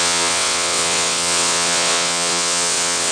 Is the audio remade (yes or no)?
yes